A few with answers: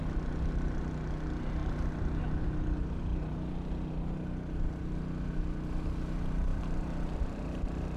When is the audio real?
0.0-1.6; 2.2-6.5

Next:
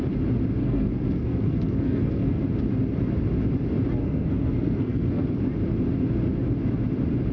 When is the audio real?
0.0-0.6; 2.4-4.0; 5.4-7.3

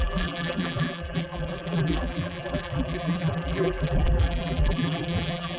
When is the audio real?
none

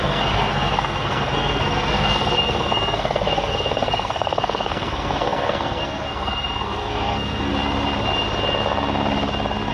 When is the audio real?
7.5-9.7

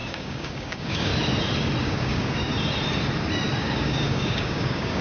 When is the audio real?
1.1-1.8; 2.5-3.6

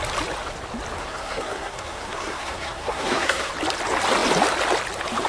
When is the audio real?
0.0-1.0; 3.5-5.3

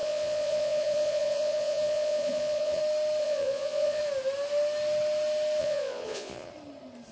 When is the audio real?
2.8-3.2; 4.0-5.6; 6.5-7.1

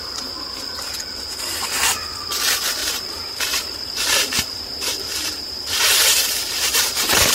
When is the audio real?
0.0-2.8